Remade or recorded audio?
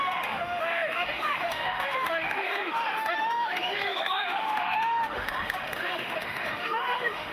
remade